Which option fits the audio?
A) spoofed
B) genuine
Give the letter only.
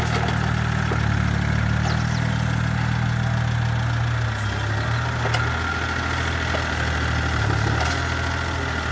B